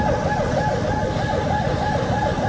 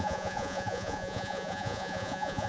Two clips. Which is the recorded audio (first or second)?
first